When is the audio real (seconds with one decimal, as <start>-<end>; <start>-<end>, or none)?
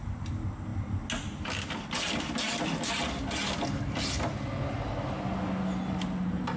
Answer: 0.0-6.6